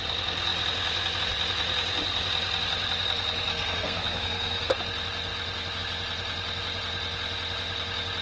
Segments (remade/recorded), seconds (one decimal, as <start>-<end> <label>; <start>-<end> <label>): 0.0-3.5 recorded; 3.5-4.7 remade; 4.7-8.2 recorded